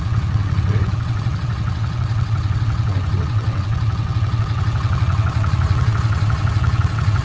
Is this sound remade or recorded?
remade